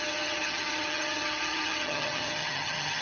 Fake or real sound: fake